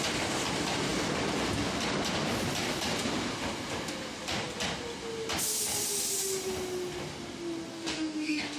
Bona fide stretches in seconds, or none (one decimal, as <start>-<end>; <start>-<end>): 0.0-7.7